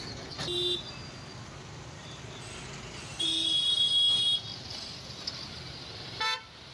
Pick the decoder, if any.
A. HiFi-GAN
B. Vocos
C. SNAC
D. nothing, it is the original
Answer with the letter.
D